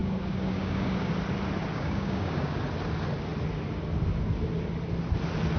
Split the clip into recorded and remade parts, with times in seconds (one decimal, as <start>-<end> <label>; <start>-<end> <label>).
0.0-1.1 remade; 1.1-1.7 recorded; 1.7-2.6 remade; 2.6-5.6 recorded